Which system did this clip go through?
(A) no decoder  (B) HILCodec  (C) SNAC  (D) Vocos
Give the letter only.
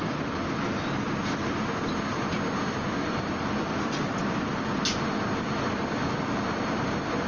A